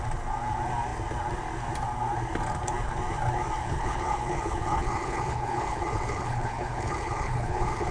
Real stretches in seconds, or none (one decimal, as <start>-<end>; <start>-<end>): 0.0-3.6